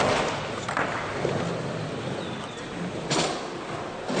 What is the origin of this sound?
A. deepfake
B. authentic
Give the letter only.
B